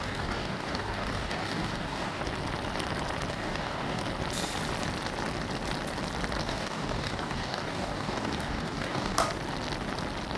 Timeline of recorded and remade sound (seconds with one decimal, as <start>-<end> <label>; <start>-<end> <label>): 0.0-2.2 remade; 2.2-3.3 recorded; 3.3-4.0 remade; 4.0-6.4 recorded; 6.4-9.2 remade; 9.2-10.4 recorded